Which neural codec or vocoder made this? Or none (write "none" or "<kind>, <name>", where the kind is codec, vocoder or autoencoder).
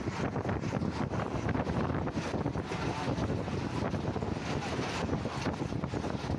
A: none